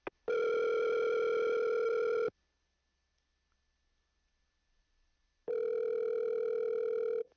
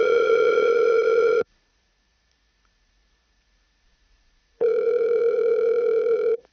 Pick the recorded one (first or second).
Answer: first